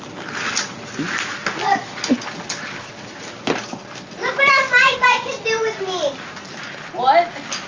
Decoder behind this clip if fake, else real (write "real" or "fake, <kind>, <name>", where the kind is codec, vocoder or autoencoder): real